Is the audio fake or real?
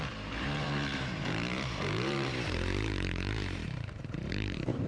fake